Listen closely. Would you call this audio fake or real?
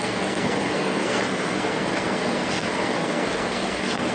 fake